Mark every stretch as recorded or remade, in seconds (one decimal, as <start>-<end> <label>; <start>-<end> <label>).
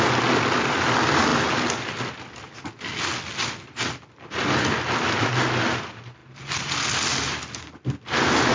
0.0-8.5 recorded